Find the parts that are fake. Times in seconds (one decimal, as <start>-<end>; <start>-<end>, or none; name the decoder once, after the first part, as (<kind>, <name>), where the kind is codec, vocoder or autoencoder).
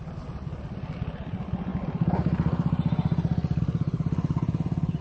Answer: none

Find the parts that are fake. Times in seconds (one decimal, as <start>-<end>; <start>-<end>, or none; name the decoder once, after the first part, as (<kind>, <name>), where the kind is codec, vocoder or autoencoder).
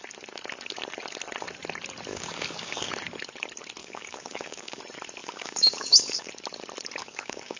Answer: 2.1-2.9 (codec, DAC); 3.8-4.8; 5.2-6.3; 7.0-7.6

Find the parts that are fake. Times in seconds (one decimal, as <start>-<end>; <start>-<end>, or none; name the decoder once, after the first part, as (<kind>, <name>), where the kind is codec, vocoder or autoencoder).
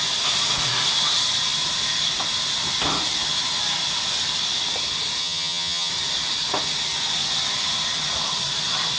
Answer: 5.2-5.9 (vocoder, HiFi-GAN)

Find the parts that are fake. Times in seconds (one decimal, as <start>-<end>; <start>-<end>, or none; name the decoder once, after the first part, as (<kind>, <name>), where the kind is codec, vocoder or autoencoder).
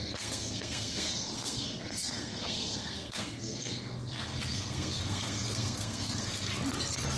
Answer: 0.0-6.5 (codec, SNAC)